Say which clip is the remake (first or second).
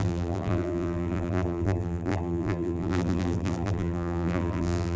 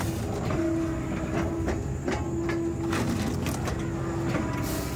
first